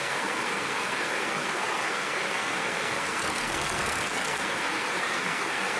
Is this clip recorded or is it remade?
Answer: remade